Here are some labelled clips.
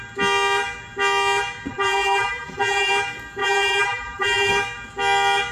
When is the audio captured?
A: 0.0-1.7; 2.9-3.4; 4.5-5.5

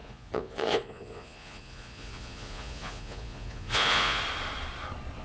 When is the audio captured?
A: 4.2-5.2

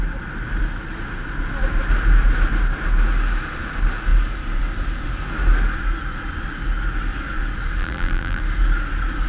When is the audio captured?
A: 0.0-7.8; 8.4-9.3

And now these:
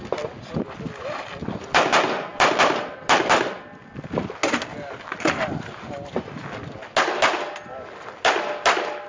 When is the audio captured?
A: 0.0-9.1

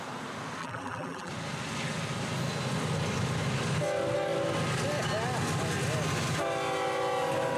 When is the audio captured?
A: 0.0-0.6; 1.3-7.6

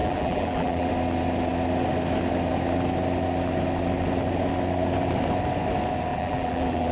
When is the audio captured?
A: 0.9-6.1